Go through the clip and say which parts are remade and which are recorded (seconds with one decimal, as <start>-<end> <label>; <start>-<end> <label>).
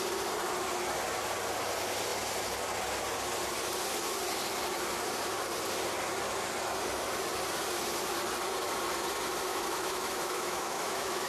0.0-9.5 recorded; 9.5-11.3 remade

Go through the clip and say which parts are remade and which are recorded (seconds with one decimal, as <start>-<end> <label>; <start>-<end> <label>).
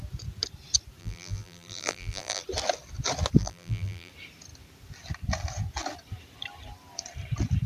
0.0-1.0 recorded; 1.0-2.4 remade; 2.4-3.4 recorded; 3.4-4.1 remade; 4.1-7.7 recorded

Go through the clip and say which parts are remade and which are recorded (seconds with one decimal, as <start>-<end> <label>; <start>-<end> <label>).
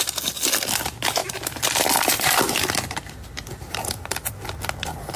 0.0-1.2 recorded; 1.2-4.3 remade; 4.3-5.2 recorded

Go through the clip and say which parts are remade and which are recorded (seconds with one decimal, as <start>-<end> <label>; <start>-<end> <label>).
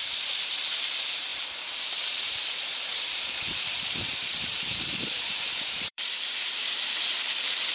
0.0-7.7 remade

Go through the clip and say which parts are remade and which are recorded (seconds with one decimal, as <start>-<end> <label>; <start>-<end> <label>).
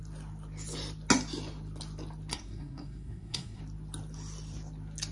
0.0-2.3 recorded; 2.3-3.6 remade; 3.6-5.1 recorded